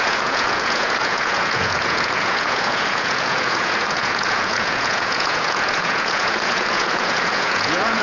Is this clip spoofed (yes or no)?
yes